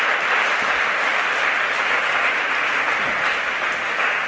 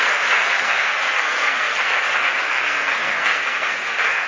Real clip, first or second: first